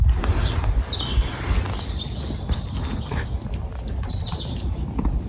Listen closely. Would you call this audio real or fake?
real